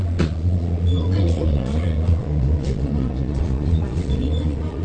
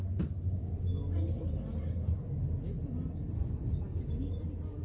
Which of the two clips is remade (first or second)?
first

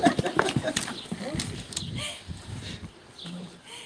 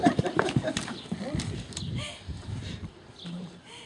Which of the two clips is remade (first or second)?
second